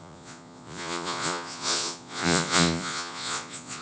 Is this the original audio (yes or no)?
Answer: no